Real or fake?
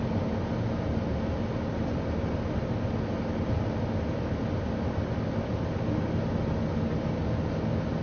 real